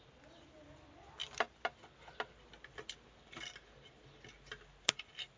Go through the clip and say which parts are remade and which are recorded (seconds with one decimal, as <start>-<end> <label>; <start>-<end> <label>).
0.0-1.2 recorded; 1.2-4.4 remade; 4.4-5.4 recorded